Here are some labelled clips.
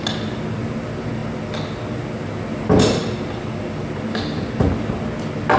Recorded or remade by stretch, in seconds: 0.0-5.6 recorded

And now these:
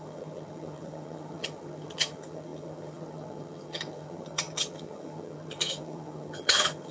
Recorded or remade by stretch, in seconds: 0.0-6.9 remade

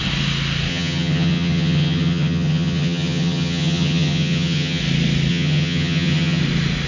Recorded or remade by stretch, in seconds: 0.0-0.7 recorded; 0.7-4.8 remade; 4.8-5.3 recorded; 5.3-6.4 remade; 6.4-6.9 recorded

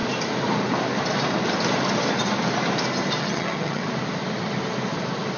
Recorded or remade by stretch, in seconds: 0.0-3.2 recorded; 3.2-3.8 remade; 3.8-5.4 recorded

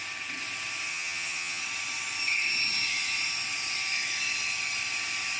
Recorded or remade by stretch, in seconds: 0.0-0.9 recorded; 0.9-1.6 remade; 1.6-5.4 recorded

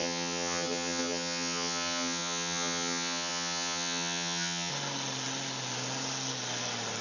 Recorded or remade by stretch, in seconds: 0.0-4.7 remade; 4.7-7.0 recorded

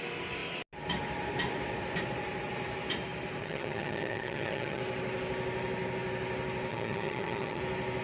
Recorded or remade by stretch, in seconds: 0.0-3.4 recorded; 3.4-4.8 remade; 4.8-6.7 recorded; 6.7-7.6 remade; 7.6-8.0 recorded